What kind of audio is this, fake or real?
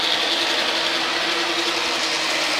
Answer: real